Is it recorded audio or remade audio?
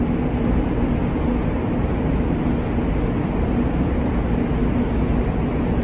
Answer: recorded